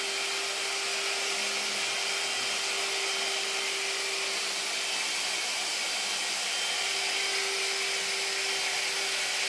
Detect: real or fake real